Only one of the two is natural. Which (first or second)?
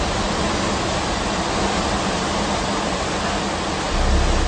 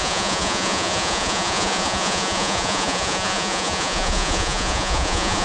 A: first